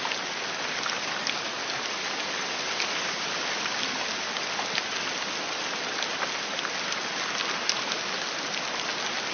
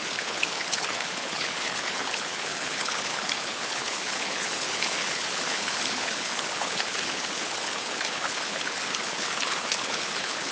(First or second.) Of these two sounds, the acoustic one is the first